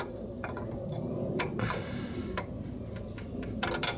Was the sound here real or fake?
real